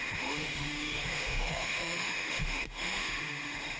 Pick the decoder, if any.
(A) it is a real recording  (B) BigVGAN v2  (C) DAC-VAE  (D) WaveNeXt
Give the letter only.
C